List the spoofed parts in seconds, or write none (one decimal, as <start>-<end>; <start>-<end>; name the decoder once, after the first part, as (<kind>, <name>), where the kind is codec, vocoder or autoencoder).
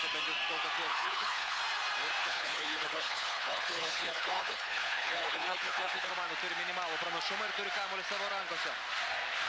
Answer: 0.9-1.6 (codec, HILCodec); 2.2-6.1